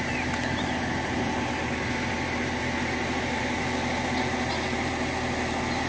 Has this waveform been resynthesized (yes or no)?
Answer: no